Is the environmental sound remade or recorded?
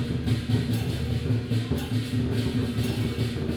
recorded